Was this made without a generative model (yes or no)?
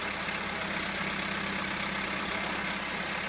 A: yes